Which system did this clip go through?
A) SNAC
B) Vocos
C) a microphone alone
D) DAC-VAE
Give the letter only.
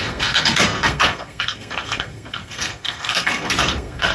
A